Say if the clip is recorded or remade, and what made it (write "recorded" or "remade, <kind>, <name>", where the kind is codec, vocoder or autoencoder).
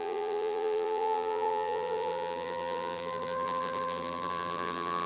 remade, vocoder, BigVGAN v2